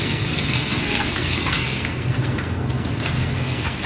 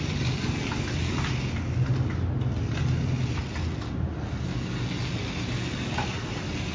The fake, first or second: first